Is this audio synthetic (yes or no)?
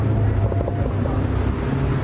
no